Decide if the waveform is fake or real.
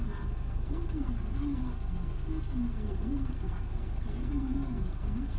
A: fake